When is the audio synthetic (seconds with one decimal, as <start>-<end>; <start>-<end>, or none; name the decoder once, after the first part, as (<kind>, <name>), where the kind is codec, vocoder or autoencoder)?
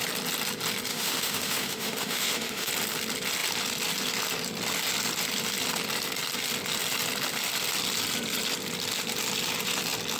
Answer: 0.9-2.7 (autoencoder, DAC-VAE)